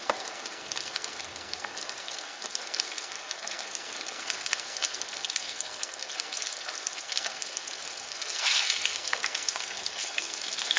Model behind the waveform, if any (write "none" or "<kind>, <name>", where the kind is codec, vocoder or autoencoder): codec, SNAC